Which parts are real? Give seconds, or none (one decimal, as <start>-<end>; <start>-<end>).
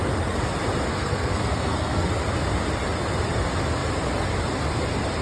0.0-0.9; 2.1-5.2